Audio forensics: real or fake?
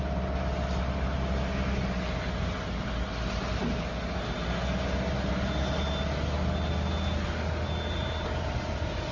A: real